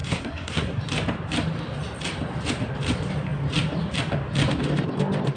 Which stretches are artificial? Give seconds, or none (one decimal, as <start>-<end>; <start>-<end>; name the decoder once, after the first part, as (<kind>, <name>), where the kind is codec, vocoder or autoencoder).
0.0-0.8 (codec, SNAC)